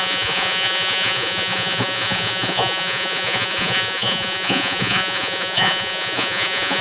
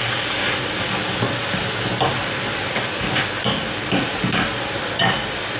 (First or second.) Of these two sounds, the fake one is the first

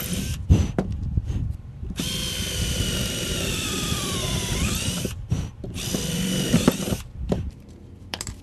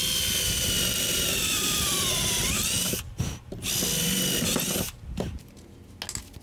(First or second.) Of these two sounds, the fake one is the first